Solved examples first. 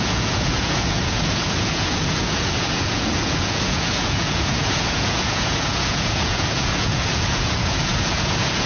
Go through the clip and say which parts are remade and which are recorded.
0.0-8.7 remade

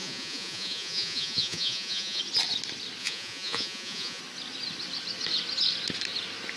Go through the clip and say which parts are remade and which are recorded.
0.0-2.2 remade; 2.2-3.0 recorded; 3.0-4.2 remade; 4.2-6.6 recorded